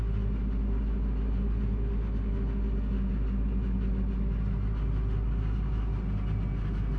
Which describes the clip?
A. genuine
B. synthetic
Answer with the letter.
A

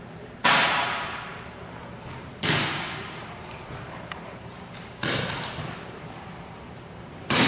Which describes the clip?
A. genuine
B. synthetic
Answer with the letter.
B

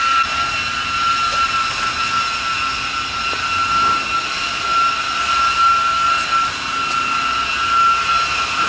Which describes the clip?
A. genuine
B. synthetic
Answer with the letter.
A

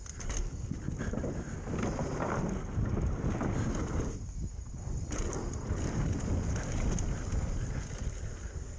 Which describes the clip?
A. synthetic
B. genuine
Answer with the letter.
B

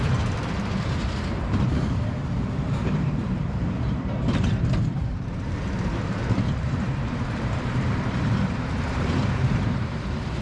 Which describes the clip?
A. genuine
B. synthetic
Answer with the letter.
B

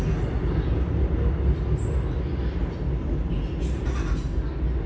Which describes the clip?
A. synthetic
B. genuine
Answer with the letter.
B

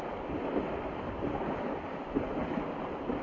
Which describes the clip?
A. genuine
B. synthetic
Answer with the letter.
A